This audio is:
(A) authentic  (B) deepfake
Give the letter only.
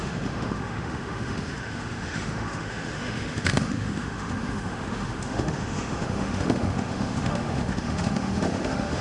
B